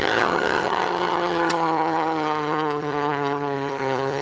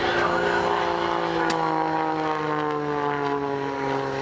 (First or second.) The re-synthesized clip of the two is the first